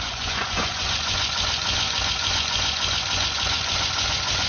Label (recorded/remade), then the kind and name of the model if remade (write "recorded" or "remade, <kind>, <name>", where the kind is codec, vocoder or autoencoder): remade, vocoder, Vocos